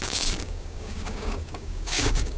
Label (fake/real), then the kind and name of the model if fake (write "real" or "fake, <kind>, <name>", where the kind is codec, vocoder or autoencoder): fake, codec, DAC